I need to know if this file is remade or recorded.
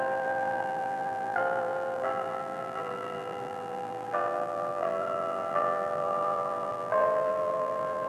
remade